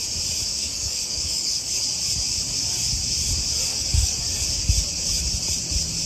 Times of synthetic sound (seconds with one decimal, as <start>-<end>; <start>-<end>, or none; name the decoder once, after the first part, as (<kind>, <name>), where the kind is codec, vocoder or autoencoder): 0.5-1.8 (codec, DAC); 3.7-4.2